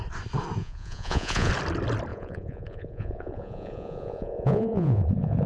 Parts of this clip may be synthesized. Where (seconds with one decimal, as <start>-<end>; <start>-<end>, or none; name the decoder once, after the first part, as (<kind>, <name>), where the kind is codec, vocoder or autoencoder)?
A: 0.6-1.5 (vocoder, Vocos); 2.1-5.5